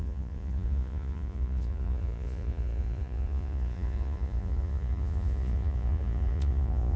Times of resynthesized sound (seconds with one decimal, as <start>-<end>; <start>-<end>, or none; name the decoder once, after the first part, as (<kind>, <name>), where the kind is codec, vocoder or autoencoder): 0.0-7.0 (vocoder, Vocos)